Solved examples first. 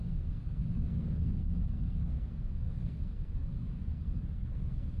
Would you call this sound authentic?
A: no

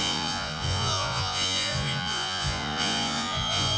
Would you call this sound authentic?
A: no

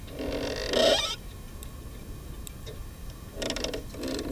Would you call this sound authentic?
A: yes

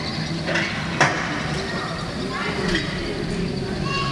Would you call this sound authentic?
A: yes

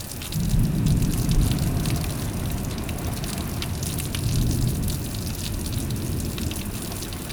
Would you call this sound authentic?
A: yes